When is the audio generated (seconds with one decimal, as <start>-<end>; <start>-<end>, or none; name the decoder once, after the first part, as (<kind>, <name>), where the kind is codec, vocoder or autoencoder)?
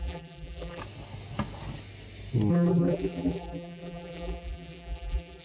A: 0.0-0.8 (vocoder, BigVGAN v2); 2.5-5.4